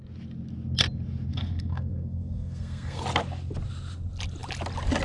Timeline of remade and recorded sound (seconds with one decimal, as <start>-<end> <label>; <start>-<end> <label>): 0.0-1.3 recorded; 1.3-3.0 remade; 3.0-5.0 recorded